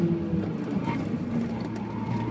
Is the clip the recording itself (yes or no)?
yes